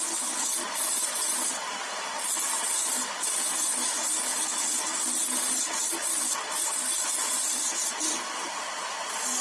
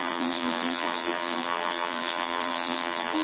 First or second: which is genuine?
first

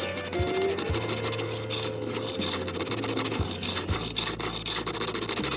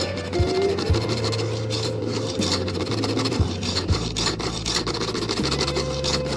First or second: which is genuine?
first